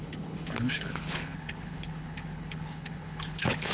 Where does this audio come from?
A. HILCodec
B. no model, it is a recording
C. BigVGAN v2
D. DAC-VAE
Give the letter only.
A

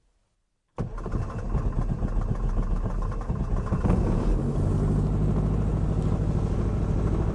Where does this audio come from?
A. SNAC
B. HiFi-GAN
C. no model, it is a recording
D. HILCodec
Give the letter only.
C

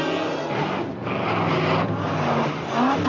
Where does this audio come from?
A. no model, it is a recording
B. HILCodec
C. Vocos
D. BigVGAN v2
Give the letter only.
A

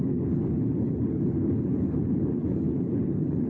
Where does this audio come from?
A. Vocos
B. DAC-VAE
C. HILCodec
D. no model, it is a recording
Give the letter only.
C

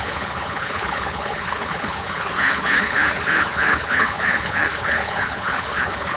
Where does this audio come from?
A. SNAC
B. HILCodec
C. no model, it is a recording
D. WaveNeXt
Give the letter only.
B